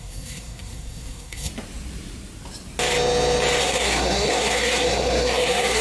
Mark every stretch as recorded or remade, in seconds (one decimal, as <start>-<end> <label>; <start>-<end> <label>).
0.0-1.5 remade; 1.5-3.6 recorded; 3.6-5.8 remade